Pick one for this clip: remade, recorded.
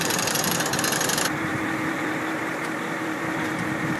remade